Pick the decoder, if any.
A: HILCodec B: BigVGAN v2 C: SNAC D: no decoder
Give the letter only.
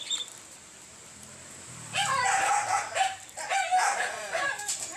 B